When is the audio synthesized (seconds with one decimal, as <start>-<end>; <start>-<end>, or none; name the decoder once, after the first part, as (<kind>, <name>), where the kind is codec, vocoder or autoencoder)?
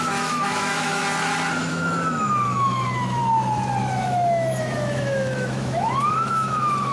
0.0-1.0 (autoencoder, DAC-VAE); 1.7-3.2; 3.8-6.9